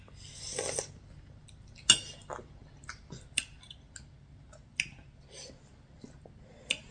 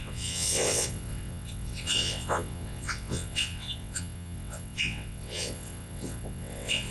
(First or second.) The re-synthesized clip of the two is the second